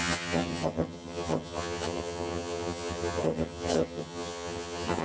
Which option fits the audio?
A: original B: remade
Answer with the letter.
B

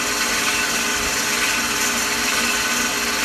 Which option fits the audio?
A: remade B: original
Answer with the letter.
B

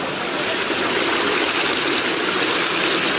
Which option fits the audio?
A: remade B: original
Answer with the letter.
B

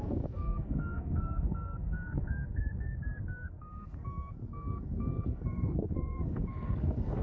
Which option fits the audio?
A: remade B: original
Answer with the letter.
A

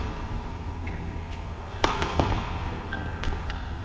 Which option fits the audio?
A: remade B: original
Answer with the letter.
A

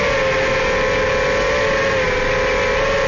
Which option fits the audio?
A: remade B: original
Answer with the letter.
B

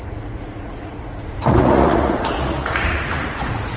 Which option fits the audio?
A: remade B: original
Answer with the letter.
A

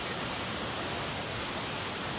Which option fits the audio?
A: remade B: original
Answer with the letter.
B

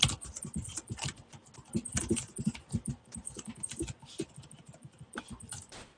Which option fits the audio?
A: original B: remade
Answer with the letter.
A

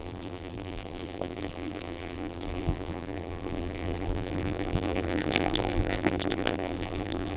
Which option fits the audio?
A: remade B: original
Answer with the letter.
A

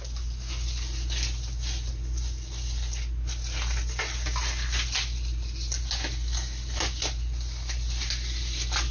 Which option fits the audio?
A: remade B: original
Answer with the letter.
B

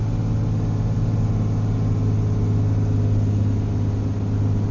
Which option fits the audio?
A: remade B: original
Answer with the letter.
B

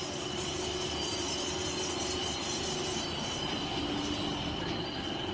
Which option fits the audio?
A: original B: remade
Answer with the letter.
A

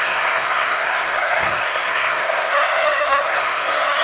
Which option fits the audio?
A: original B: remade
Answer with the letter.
B